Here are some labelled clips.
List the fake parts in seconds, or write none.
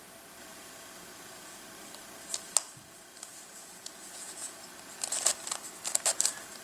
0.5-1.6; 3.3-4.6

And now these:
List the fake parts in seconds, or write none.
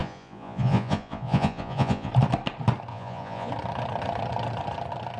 0.0-2.1; 2.9-3.5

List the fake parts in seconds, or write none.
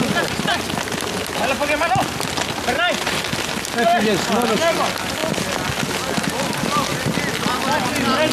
none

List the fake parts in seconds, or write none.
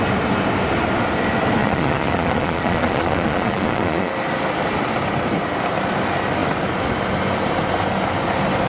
1.6-4.1